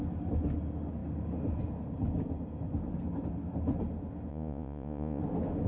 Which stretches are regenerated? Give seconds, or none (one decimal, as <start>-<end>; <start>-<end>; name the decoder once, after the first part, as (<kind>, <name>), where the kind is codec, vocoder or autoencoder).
4.3-5.2 (vocoder, Vocos)